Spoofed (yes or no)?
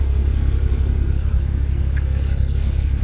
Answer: yes